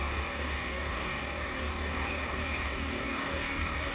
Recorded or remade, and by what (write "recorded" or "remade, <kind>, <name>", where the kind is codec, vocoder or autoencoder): remade, codec, DAC